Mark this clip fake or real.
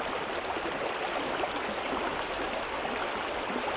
real